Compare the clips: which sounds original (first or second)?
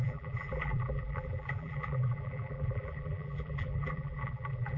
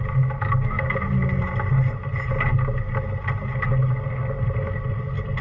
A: second